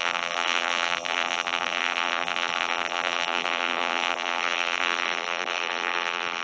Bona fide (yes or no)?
no